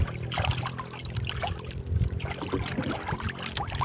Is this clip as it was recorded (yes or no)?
yes